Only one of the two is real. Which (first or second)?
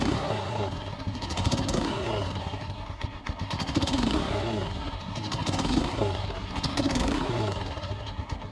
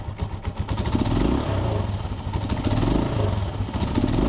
second